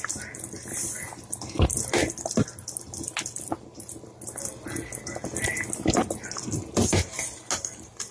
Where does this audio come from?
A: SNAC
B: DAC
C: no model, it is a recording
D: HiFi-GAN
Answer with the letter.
C